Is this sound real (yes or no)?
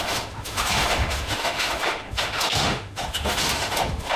no